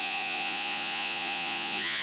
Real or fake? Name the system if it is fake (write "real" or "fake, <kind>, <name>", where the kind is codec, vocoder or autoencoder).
fake, vocoder, Vocos